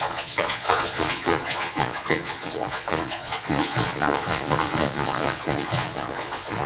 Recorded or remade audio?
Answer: remade